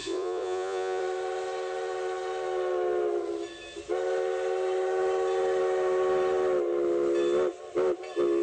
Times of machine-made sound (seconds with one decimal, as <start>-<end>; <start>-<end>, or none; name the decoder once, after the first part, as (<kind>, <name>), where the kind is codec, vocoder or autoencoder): 0.0-1.0 (vocoder, Vocos)